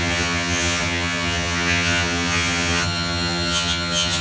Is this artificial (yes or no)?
yes